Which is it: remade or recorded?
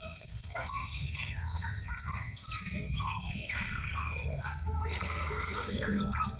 remade